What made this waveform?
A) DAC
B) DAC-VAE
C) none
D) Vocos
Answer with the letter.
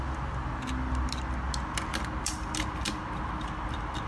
C